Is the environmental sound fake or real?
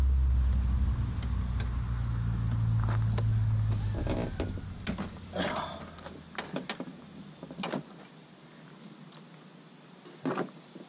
real